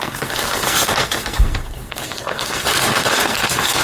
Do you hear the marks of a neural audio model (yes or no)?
yes